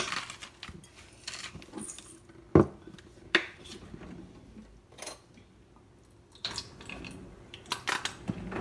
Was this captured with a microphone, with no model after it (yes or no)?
yes